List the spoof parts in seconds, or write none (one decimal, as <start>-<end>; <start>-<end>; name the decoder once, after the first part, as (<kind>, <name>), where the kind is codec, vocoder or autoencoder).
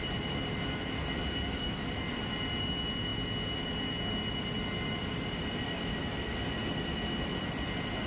none